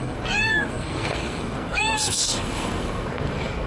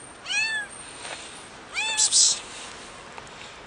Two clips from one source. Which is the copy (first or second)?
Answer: first